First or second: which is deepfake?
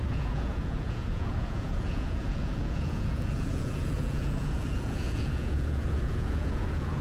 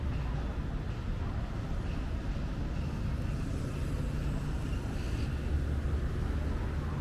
first